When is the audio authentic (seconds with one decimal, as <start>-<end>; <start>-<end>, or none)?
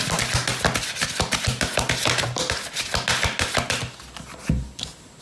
0.0-5.2